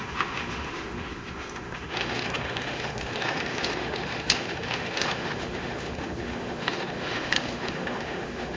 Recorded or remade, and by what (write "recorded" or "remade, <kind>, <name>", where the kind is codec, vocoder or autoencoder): remade, autoencoder, DAC-VAE